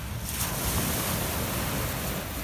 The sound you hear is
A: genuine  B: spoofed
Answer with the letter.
A